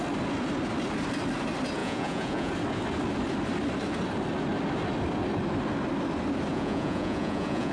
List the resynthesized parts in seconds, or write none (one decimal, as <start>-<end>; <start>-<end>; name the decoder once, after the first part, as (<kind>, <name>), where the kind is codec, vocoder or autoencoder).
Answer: 1.8-2.5 (vocoder, Vocos); 6.5-7.7